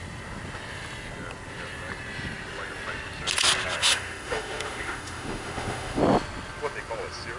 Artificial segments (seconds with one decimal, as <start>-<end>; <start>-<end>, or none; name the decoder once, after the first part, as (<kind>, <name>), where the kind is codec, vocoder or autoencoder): 3.8-6.0 (autoencoder, DAC-VAE)